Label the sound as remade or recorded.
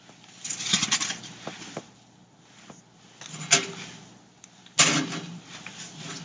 recorded